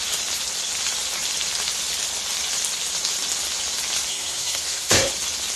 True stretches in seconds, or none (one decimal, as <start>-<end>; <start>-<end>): 0.0-4.1; 5.1-5.6

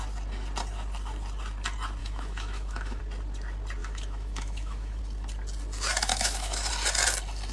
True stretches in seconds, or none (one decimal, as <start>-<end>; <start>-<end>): 0.0-2.0; 3.0-3.8; 5.0-6.1; 6.7-7.5

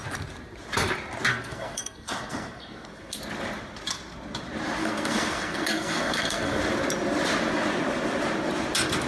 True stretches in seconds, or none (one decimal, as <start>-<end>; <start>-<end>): 0.0-1.3; 3.2-4.8; 6.6-9.1

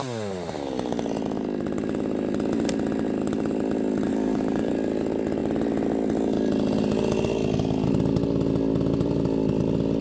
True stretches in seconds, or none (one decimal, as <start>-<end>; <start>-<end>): 0.0-4.1; 4.7-10.0